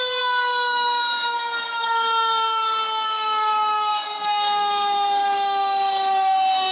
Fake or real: fake